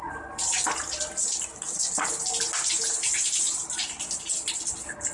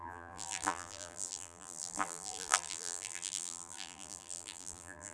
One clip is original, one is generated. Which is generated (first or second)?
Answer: second